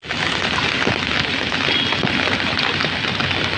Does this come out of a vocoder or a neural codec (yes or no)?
no